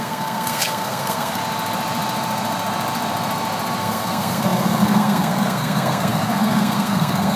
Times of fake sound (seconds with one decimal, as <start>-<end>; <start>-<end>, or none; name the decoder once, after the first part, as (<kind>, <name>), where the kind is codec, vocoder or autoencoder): 0.0-1.4 (codec, SNAC); 3.8-7.4